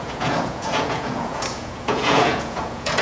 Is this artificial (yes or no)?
yes